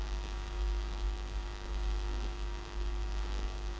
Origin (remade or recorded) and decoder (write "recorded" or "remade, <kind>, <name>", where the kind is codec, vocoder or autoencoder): remade, codec, DAC